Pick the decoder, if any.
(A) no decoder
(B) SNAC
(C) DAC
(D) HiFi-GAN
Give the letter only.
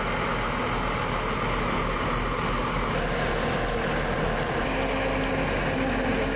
A